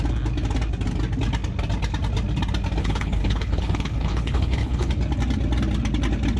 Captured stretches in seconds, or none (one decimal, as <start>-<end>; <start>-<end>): 0.0-2.8; 4.9-6.4